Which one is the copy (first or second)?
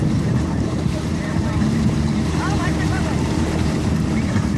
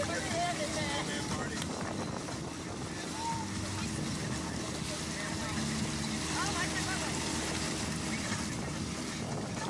first